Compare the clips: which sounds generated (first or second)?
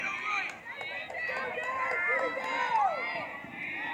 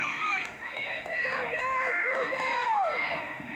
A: second